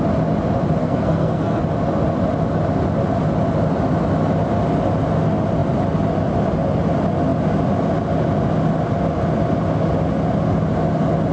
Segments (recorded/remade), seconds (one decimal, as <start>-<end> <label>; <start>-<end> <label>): 0.0-0.8 recorded; 0.8-1.6 remade; 1.6-11.3 recorded